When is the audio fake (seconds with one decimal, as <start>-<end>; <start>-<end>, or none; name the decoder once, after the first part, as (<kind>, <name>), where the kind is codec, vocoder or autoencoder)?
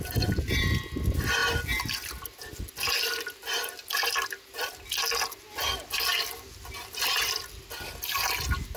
none